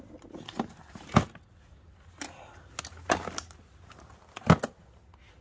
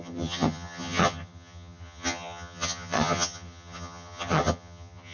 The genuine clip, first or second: first